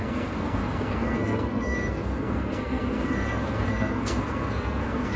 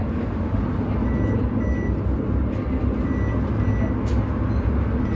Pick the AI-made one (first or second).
first